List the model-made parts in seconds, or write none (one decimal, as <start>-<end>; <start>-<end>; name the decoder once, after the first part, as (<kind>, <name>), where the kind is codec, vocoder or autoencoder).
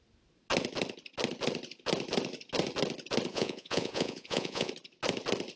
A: 3.3-4.7 (vocoder, Vocos)